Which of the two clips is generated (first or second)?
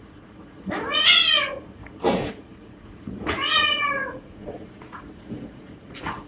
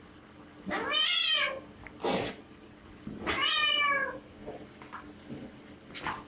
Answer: first